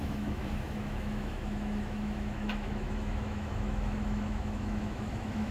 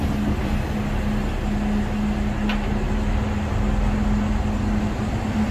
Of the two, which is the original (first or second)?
second